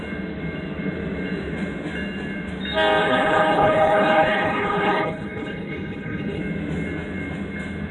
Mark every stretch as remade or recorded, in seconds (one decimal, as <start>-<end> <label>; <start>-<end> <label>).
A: 0.0-3.0 recorded; 3.0-6.4 remade; 6.4-7.9 recorded